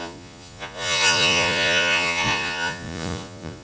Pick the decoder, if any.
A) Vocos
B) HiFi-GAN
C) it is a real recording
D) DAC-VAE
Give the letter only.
A